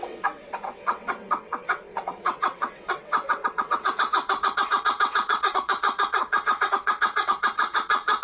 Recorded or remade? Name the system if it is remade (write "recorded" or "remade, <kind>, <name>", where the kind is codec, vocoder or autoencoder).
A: remade, vocoder, WaveNeXt